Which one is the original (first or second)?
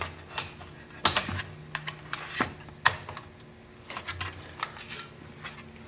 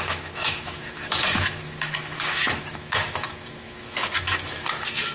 first